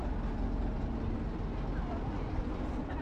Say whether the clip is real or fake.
real